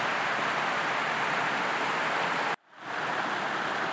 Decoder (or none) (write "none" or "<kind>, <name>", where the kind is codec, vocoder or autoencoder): none